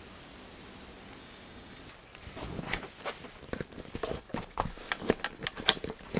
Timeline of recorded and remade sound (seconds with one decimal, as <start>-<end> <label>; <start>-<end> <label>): 0.0-1.2 recorded; 1.2-1.8 remade; 1.8-6.2 recorded